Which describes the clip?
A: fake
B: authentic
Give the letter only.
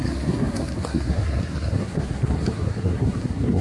A